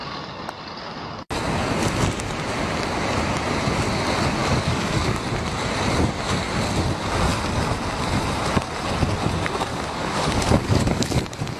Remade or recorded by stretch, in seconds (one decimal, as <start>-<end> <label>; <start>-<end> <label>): 0.0-4.4 recorded; 4.4-5.2 remade; 5.2-9.7 recorded; 9.7-11.2 remade; 11.2-11.6 recorded